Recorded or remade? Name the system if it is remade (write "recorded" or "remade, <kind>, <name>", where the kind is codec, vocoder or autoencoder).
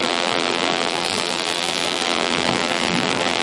remade, vocoder, BigVGAN v2